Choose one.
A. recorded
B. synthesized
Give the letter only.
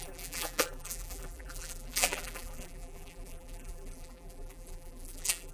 B